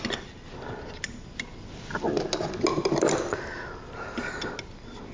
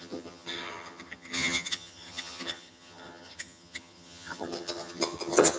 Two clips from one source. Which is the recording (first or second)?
first